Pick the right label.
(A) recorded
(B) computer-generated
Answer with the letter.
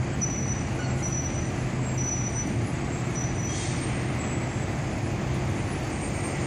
A